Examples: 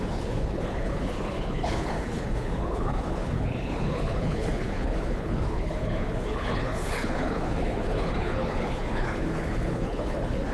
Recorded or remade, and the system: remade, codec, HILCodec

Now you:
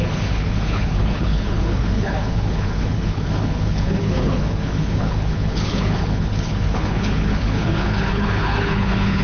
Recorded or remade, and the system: remade, codec, HILCodec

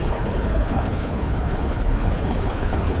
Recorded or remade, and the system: remade, codec, HILCodec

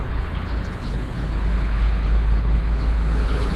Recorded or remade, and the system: remade, codec, HILCodec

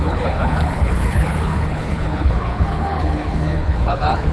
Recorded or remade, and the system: remade, codec, HILCodec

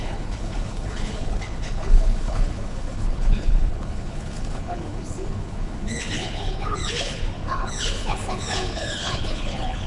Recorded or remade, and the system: remade, codec, HILCodec